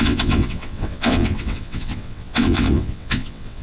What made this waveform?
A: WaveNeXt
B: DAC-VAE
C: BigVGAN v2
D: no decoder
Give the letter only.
A